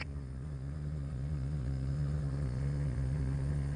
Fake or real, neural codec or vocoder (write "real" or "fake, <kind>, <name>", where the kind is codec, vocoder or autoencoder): fake, vocoder, Vocos